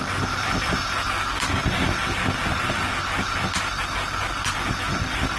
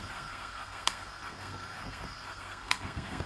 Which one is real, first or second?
first